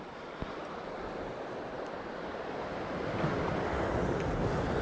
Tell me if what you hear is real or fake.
real